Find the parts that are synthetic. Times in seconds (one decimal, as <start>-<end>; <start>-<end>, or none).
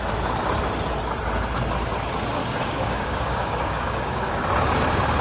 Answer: 2.4-4.3